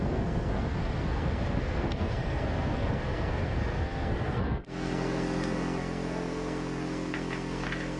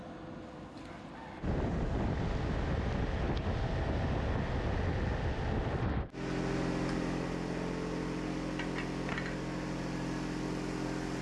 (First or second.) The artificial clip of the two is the first